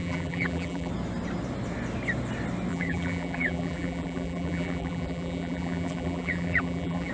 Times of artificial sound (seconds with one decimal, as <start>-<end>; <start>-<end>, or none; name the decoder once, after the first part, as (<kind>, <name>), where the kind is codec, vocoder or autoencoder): 0.0-0.9 (vocoder, BigVGAN v2); 2.7-7.1